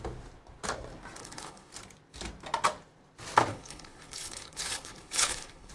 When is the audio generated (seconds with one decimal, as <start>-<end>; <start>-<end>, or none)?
1.2-1.7; 3.5-5.7